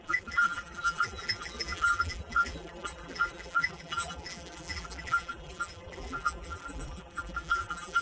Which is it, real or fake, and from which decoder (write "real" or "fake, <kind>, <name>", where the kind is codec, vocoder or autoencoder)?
fake, vocoder, BigVGAN v2